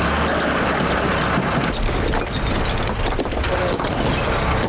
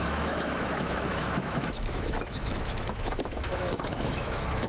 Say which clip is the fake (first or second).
second